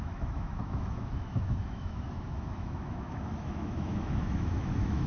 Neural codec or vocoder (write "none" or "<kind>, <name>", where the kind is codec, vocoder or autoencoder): autoencoder, DAC-VAE